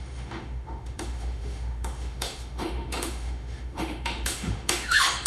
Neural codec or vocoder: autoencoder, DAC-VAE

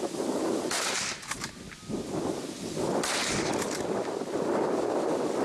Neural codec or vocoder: none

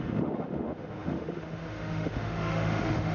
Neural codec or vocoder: autoencoder, DAC-VAE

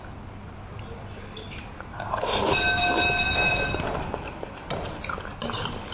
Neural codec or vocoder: none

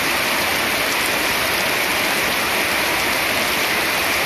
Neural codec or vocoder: none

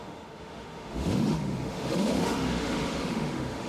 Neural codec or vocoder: autoencoder, DAC-VAE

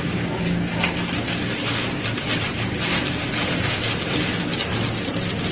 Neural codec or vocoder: none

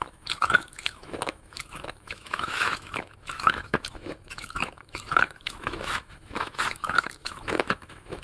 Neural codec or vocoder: autoencoder, DAC-VAE